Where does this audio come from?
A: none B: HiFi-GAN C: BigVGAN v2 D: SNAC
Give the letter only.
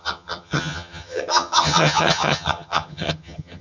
B